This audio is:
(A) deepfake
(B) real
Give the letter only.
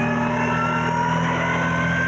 B